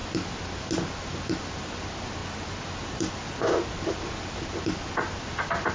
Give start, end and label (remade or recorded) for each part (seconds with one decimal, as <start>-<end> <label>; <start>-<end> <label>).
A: 0.0-1.8 recorded; 1.8-5.7 remade